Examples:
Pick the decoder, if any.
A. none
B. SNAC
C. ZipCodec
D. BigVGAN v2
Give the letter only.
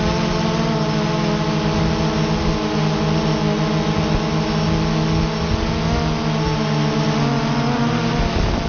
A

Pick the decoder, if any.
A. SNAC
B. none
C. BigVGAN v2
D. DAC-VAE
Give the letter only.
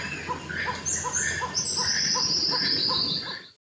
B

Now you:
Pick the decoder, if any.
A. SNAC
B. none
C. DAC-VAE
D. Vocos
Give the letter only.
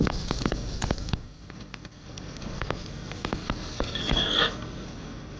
A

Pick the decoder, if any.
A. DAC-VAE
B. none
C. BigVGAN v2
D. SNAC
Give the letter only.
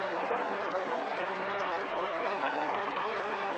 D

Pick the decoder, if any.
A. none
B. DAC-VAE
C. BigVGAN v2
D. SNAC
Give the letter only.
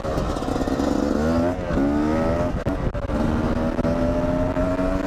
A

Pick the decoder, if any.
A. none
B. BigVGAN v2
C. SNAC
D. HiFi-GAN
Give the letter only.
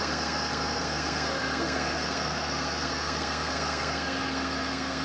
C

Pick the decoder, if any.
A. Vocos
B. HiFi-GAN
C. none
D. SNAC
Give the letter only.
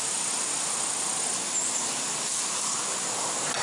C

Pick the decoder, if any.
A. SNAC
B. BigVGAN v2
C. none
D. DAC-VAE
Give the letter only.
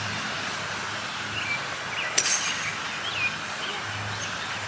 C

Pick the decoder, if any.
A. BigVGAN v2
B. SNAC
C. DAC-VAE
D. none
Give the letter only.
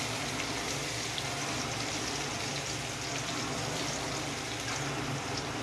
D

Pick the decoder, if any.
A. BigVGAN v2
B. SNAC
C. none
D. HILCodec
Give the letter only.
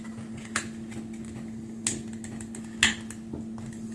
C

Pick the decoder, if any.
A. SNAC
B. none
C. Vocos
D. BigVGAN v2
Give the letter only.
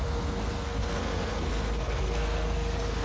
A